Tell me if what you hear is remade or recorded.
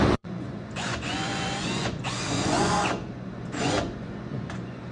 remade